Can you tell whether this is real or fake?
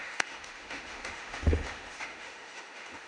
fake